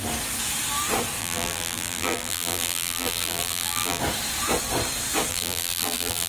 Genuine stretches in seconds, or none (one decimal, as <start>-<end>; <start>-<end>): 0.0-1.2; 4.0-5.3